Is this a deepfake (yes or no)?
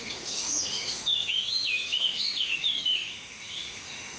yes